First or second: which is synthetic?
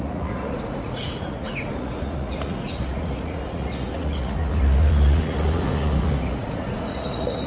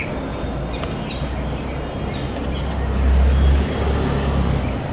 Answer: first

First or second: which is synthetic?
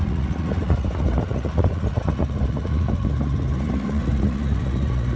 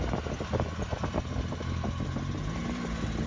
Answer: first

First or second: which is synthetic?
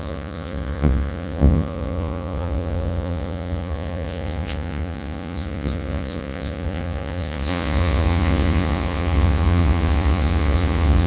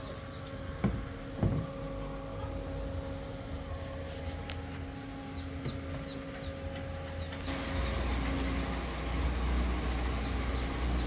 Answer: first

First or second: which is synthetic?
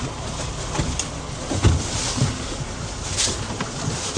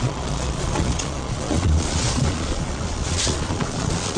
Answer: second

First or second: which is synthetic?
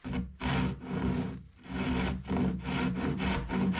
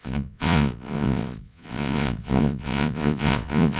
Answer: second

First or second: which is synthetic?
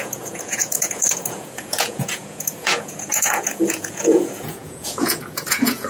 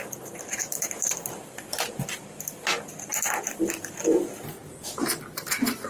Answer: first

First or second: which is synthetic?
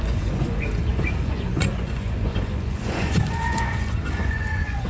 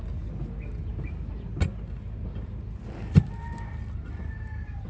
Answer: first